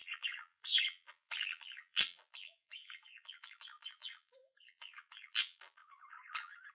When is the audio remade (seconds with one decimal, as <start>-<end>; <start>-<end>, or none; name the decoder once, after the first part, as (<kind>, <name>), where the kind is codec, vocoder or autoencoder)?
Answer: 0.0-6.7 (vocoder, BigVGAN v2)